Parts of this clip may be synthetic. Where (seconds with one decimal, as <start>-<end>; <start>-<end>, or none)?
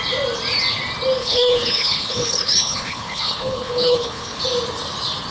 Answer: 1.2-4.4